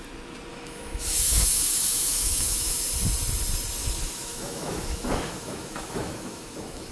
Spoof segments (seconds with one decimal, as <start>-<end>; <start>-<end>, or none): 0.5-2.8; 3.8-6.9